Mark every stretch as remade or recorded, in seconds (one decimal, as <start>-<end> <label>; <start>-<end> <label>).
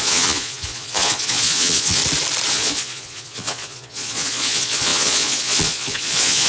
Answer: 0.0-2.0 remade; 2.0-2.5 recorded; 2.5-6.5 remade